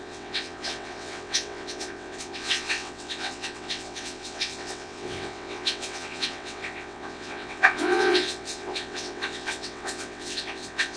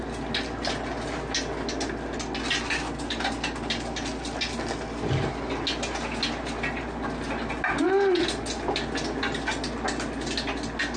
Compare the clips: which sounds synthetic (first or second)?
first